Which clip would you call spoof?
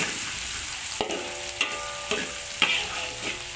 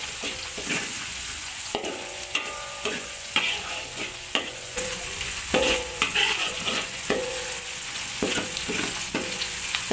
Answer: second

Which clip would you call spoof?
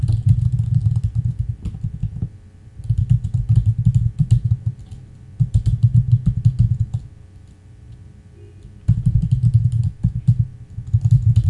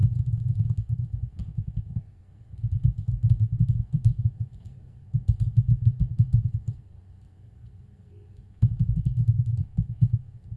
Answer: second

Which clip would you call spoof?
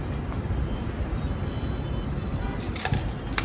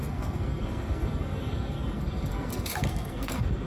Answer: second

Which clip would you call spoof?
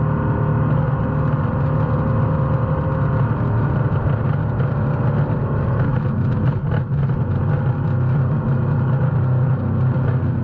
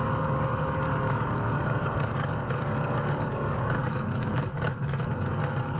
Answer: second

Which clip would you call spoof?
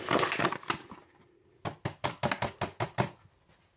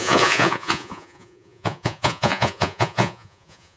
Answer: second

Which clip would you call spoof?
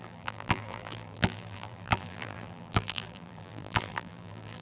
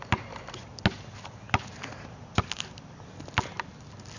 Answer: first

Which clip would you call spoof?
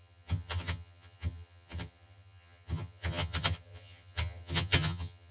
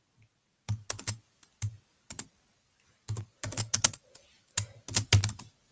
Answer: first